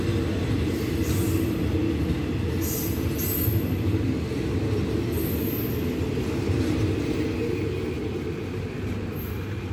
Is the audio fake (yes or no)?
no